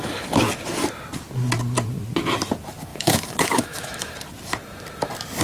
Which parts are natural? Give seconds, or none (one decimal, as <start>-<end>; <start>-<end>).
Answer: 0.0-2.9; 4.1-5.4